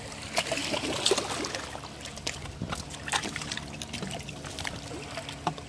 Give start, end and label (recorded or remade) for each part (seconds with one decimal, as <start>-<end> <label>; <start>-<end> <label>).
0.0-5.7 recorded